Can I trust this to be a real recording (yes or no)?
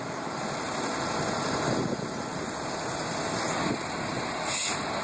yes